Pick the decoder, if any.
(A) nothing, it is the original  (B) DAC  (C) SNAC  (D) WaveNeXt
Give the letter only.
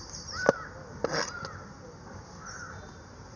A